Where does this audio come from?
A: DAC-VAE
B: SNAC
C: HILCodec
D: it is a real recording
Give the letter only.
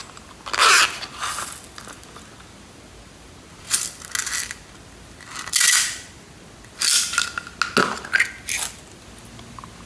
D